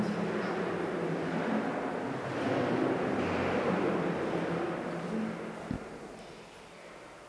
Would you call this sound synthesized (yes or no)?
no